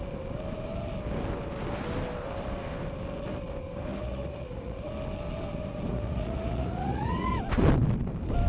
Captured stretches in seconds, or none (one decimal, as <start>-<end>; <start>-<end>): 0.0-3.9; 4.9-5.9; 7.3-8.5